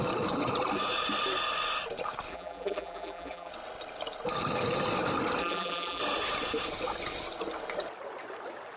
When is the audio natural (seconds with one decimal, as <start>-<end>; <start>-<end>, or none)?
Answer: 0.0-2.3; 3.5-5.4; 6.0-8.8